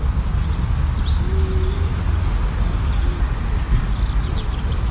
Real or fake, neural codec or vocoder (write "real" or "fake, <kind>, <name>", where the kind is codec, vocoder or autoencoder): real